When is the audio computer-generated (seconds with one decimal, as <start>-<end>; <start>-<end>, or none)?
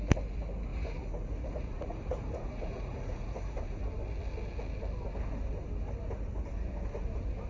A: 0.7-3.8